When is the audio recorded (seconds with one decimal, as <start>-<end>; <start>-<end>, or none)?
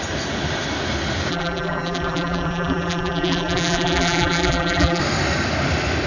0.0-1.3; 5.0-6.1